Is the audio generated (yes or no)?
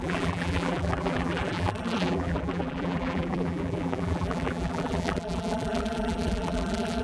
yes